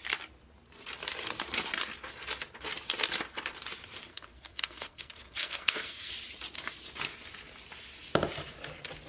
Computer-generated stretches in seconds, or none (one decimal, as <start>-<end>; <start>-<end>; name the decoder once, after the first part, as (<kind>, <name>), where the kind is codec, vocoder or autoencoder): 4.1-6.1 (codec, SNAC)